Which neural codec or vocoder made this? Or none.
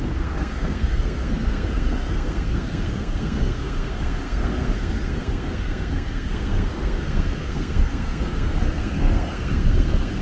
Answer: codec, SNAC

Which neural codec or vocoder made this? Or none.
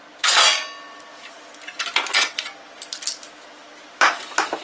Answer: none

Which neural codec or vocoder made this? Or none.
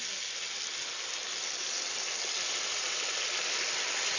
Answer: none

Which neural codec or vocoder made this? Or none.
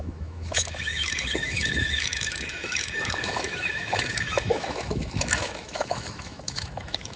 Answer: autoencoder, DAC-VAE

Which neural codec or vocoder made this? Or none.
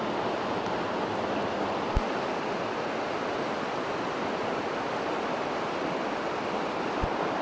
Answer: none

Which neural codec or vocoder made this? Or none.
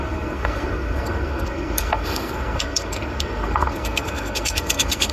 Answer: codec, SNAC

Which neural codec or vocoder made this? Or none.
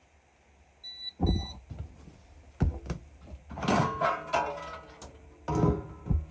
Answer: none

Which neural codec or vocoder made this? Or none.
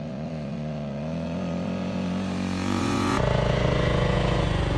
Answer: vocoder, Vocos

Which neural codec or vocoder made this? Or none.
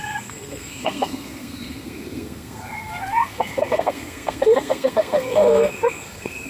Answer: codec, SNAC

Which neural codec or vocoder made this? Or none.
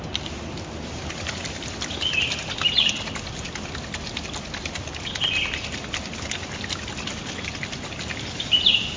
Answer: none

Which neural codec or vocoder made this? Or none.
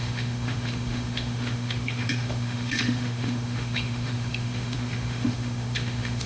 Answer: autoencoder, DAC-VAE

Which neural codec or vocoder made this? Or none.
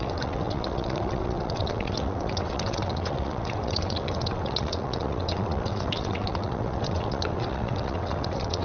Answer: vocoder, WaveNeXt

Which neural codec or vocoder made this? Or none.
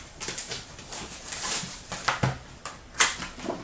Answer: none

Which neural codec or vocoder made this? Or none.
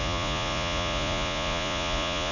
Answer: vocoder, Vocos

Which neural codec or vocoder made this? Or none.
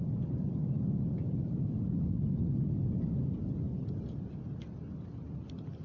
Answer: none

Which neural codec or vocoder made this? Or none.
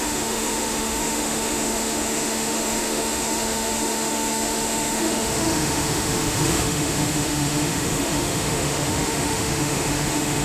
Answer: autoencoder, DAC-VAE